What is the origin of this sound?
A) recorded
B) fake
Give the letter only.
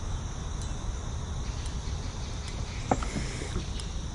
A